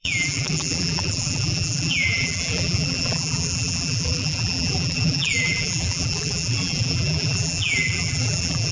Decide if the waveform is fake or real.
fake